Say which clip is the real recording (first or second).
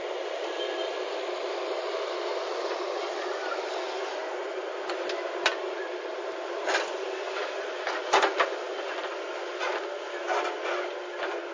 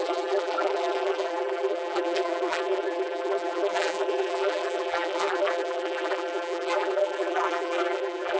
first